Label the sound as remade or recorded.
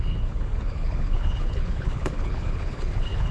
remade